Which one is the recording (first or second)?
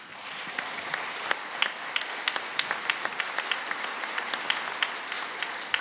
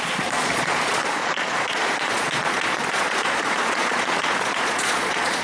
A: first